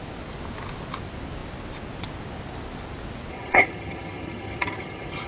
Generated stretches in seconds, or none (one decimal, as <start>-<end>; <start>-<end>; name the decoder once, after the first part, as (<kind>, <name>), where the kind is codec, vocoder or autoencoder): 3.3-5.3 (vocoder, HiFi-GAN)